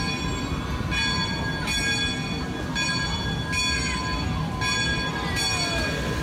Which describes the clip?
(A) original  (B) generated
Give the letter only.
A